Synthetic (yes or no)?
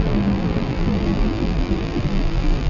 yes